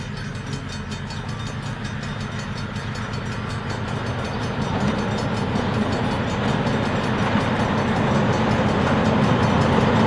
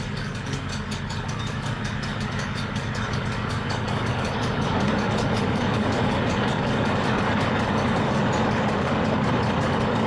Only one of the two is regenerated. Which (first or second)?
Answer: second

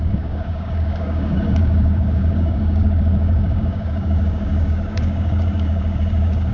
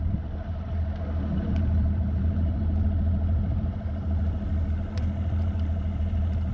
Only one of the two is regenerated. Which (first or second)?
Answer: first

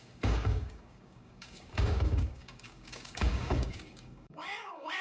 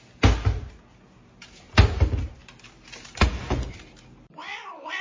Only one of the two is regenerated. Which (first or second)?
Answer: first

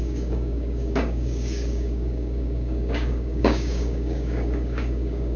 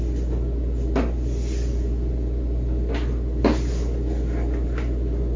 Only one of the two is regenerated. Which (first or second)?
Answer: first